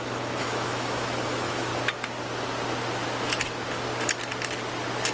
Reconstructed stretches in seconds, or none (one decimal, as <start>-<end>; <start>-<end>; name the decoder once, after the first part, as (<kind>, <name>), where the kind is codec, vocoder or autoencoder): 0.0-1.7 (autoencoder, DAC-VAE)